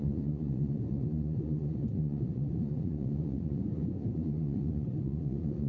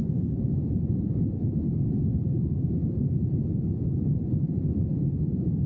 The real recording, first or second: second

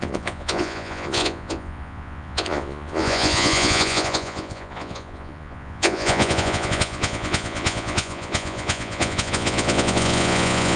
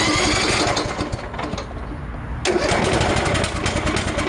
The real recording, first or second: second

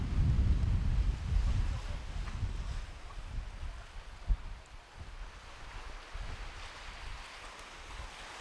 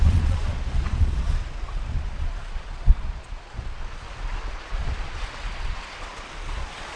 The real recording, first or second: first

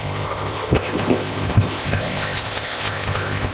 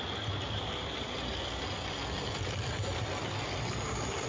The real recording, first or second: second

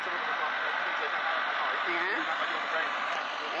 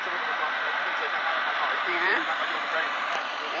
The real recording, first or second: first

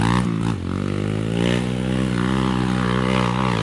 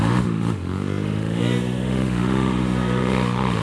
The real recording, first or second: first